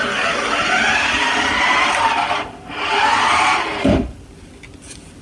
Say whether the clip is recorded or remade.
recorded